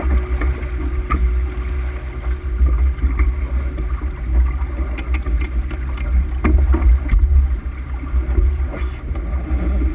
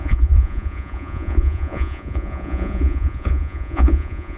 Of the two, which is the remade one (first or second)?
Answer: second